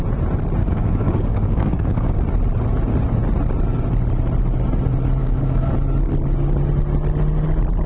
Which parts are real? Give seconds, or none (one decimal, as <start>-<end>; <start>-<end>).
0.0-0.6; 2.1-5.2; 5.7-7.9